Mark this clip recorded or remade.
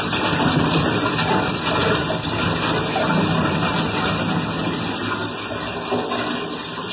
recorded